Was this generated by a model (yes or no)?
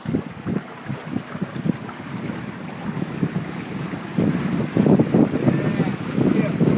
no